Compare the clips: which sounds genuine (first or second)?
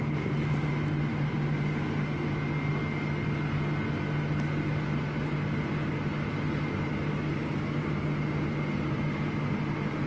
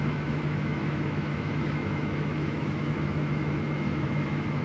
first